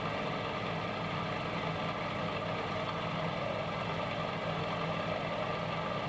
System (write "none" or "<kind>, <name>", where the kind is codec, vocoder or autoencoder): none